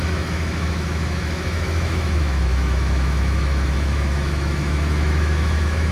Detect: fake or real fake